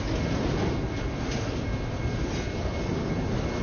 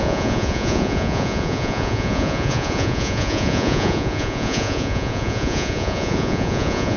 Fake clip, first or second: second